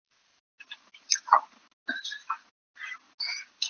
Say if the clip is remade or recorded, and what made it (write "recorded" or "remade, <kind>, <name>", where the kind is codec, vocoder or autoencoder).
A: recorded